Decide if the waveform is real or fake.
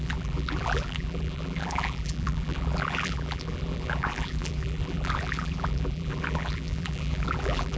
fake